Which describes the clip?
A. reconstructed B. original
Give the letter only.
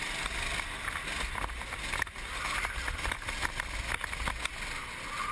B